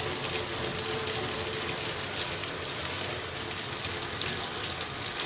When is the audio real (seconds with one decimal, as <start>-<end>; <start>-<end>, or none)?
0.0-5.3